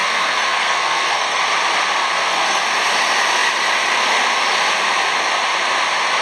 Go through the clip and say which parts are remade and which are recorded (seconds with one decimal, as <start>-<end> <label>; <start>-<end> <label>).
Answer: 0.0-1.4 remade; 1.4-2.0 recorded; 2.0-2.6 remade; 2.6-6.2 recorded